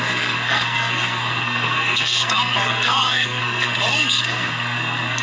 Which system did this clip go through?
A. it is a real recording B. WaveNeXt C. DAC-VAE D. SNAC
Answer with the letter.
D